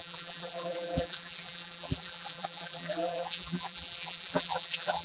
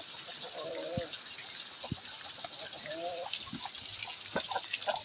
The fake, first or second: first